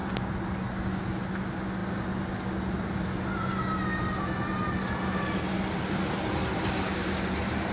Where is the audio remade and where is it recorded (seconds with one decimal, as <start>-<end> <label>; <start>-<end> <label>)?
0.0-7.7 recorded